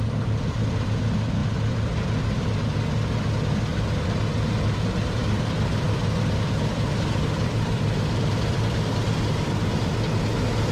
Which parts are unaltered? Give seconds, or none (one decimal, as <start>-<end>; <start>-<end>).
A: 0.0-1.4; 2.4-3.7; 4.5-5.2; 9.3-10.7